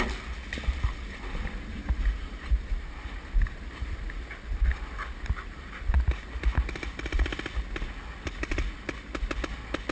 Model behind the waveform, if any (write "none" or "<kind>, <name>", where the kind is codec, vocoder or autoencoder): none